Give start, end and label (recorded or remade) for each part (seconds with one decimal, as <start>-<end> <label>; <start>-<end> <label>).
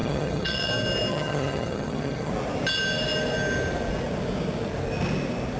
0.0-0.7 remade; 0.7-1.1 recorded; 1.1-2.3 remade; 2.3-5.6 recorded